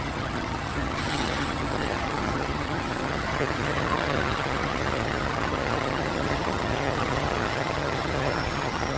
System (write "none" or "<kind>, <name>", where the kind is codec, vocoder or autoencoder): vocoder, HiFi-GAN